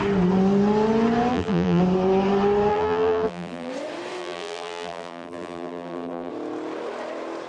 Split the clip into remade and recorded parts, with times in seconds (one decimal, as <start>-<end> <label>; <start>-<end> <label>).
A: 0.0-1.3 recorded; 1.3-1.8 remade; 1.8-2.7 recorded; 2.7-3.7 remade; 3.7-4.2 recorded; 4.2-6.3 remade; 6.3-7.5 recorded